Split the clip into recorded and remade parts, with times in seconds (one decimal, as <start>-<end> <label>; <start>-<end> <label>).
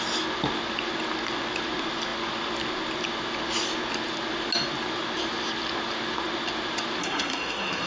0.0-7.0 recorded; 7.0-7.9 remade